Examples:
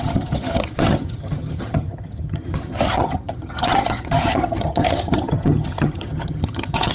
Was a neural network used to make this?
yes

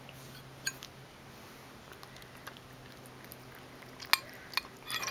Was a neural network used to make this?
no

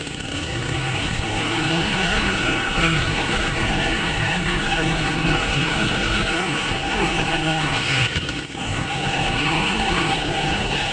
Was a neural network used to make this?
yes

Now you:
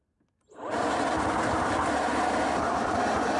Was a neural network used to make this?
no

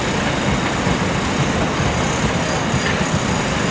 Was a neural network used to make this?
no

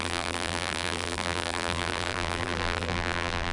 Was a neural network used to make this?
yes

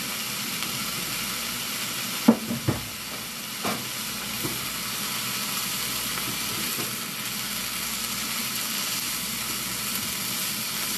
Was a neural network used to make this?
no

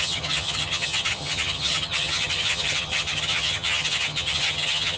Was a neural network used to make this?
yes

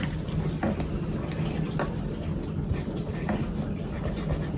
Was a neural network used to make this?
no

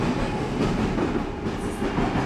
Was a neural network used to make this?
no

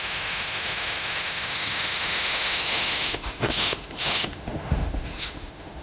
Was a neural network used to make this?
yes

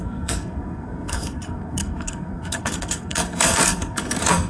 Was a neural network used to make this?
yes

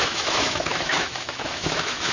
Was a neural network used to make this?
yes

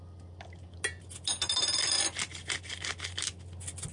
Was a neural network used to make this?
no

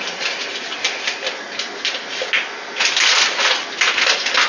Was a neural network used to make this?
no